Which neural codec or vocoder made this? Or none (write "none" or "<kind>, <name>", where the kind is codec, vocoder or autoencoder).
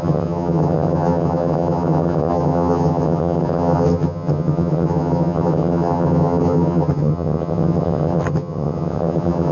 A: vocoder, HiFi-GAN